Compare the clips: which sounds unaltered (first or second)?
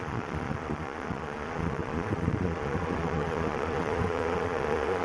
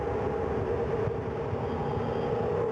second